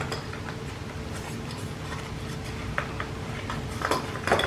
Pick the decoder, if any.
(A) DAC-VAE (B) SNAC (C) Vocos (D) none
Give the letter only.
D